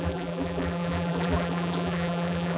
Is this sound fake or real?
fake